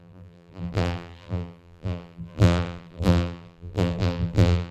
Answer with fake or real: fake